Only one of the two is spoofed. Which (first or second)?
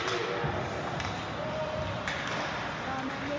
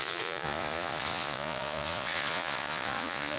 second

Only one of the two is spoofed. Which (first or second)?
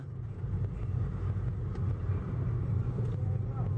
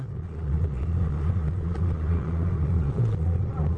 second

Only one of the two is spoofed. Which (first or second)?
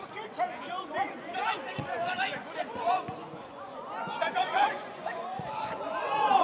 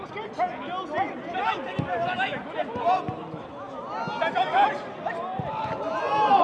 first